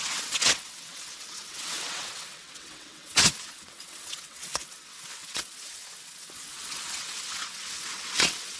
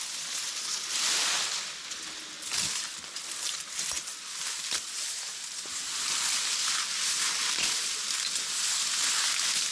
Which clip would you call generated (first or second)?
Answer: first